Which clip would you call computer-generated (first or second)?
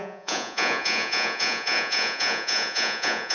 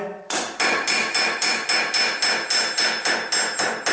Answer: first